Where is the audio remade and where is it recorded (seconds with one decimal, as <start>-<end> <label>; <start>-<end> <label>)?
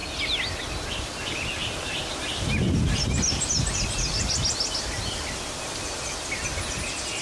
0.0-7.2 recorded